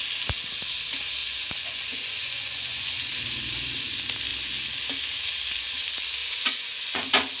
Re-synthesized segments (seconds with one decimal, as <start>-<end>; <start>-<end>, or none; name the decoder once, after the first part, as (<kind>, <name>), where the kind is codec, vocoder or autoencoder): 1.2-3.1 (vocoder, Vocos); 6.2-7.0